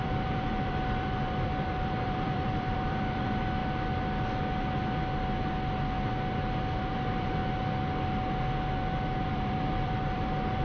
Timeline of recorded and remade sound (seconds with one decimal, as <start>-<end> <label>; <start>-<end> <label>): 0.0-3.6 remade; 3.6-6.9 recorded; 6.9-7.4 remade; 7.4-9.3 recorded; 9.3-10.6 remade